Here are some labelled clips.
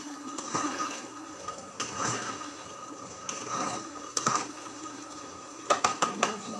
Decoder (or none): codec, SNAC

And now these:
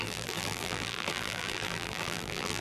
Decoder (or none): vocoder, BigVGAN v2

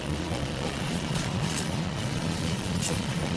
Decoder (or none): vocoder, Vocos